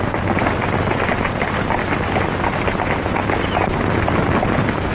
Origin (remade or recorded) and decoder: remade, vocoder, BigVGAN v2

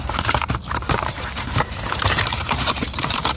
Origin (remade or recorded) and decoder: remade, vocoder, BigVGAN v2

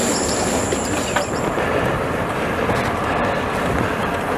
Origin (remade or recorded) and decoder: remade, vocoder, BigVGAN v2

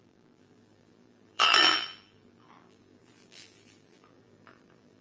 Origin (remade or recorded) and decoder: remade, vocoder, BigVGAN v2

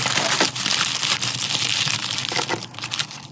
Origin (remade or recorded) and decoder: recorded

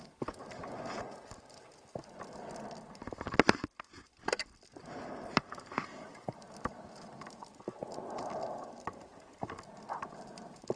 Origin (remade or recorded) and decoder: recorded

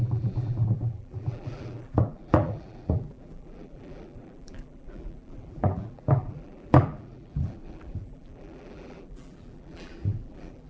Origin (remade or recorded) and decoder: remade, vocoder, BigVGAN v2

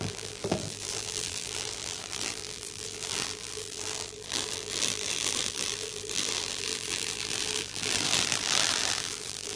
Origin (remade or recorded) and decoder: remade, vocoder, BigVGAN v2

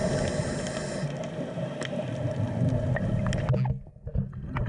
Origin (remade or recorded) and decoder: recorded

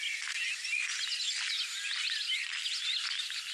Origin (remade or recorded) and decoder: recorded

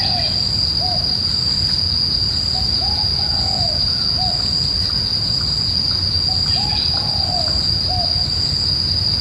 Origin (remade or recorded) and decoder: recorded